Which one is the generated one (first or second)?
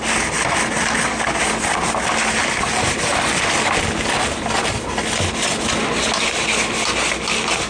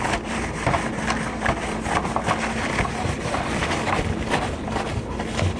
second